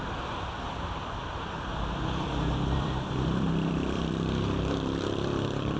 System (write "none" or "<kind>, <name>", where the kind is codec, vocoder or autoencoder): vocoder, BigVGAN v2